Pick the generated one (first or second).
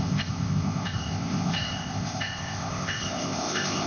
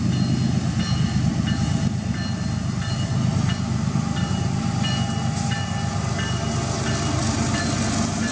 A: first